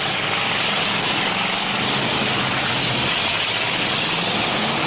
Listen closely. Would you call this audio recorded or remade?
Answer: recorded